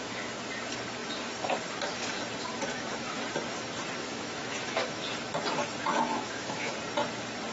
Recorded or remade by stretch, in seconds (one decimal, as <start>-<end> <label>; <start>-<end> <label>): 0.0-2.7 recorded; 2.7-3.2 remade; 3.2-4.0 recorded; 4.0-5.0 remade; 5.0-5.9 recorded; 5.9-6.7 remade; 6.7-7.5 recorded